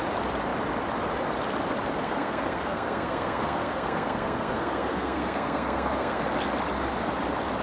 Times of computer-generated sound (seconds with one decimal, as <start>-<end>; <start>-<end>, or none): 2.0-6.2